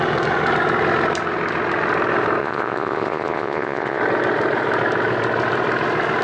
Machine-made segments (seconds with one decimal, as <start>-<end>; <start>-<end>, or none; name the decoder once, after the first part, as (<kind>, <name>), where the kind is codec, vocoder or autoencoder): 2.4-4.0 (vocoder, Vocos)